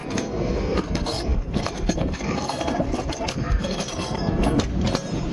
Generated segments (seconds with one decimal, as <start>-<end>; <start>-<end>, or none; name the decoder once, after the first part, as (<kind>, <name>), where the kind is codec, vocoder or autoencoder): 0.0-4.7 (codec, SNAC)